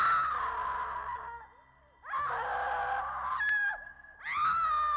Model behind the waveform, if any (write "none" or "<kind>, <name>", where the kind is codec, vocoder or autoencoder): none